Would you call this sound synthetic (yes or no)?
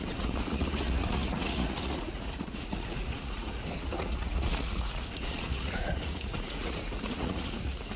yes